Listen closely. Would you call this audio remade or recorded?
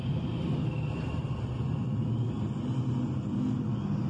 recorded